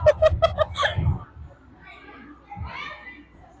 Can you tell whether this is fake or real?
real